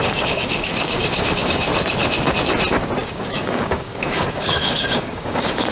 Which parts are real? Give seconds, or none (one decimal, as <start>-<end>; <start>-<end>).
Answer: 1.7-3.0